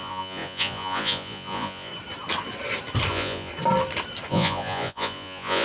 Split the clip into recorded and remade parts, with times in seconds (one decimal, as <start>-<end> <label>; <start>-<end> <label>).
0.0-1.9 remade; 1.9-3.1 recorded; 3.1-3.5 remade; 3.5-4.3 recorded; 4.3-5.6 remade